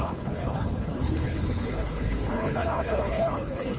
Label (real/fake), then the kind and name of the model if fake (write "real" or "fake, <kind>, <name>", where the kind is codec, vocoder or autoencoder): fake, codec, HILCodec